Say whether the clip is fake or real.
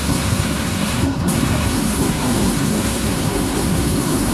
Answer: fake